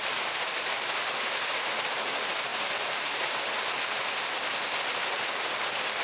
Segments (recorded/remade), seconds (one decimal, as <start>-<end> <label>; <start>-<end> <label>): 0.0-6.0 recorded